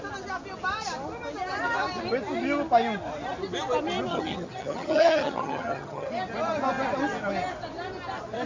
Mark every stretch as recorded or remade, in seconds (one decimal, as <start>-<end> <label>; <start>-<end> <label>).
0.0-4.1 recorded; 4.1-6.1 remade; 6.1-8.5 recorded